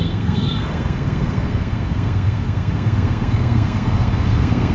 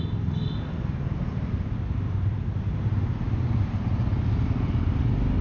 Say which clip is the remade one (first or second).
first